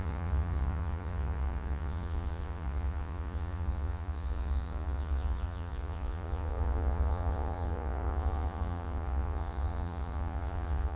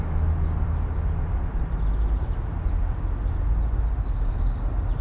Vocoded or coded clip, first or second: first